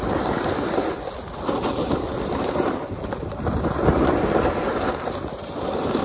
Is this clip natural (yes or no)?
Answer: yes